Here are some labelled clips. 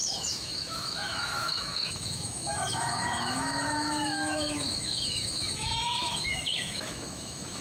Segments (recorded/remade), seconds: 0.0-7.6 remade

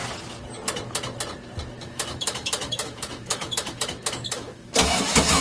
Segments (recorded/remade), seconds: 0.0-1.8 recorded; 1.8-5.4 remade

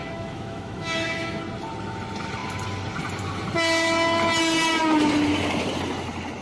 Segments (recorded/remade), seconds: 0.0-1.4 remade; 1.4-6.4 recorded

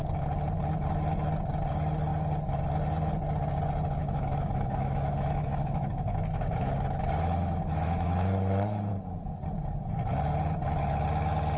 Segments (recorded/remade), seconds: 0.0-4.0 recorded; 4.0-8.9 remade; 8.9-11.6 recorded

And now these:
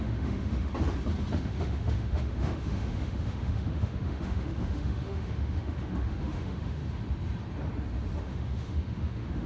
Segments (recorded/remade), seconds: 0.0-0.7 remade; 0.7-1.3 recorded; 1.3-6.8 remade; 6.8-8.2 recorded; 8.2-9.5 remade

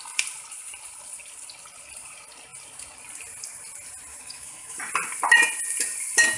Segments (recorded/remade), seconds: 0.0-4.1 recorded; 4.1-4.8 remade; 4.8-6.4 recorded